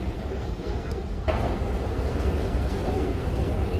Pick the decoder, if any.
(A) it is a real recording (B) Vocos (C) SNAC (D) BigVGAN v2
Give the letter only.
C